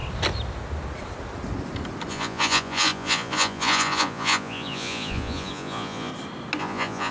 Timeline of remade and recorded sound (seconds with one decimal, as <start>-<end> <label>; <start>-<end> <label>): 0.0-2.1 recorded; 2.1-6.1 remade; 6.1-6.6 recorded; 6.6-7.1 remade

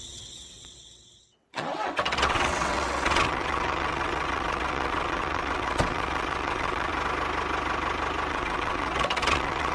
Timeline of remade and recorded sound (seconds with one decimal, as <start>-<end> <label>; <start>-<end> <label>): 0.0-6.9 remade; 6.9-8.3 recorded; 8.3-9.7 remade